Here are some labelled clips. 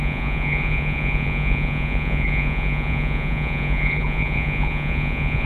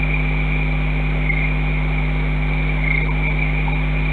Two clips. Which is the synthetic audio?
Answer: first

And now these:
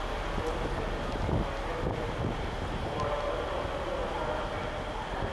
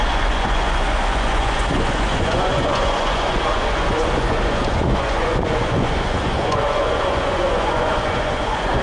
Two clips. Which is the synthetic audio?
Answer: second